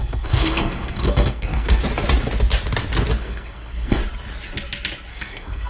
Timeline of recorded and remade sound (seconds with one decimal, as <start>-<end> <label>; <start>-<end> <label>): 0.0-1.8 remade; 1.8-3.2 recorded; 3.2-4.0 remade; 4.0-5.1 recorded; 5.1-5.7 remade